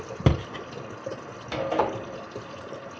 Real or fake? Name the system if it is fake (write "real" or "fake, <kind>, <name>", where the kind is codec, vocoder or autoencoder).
real